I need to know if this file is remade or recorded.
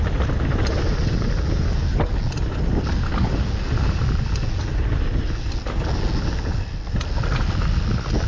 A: recorded